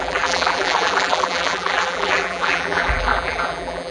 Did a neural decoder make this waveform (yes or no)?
yes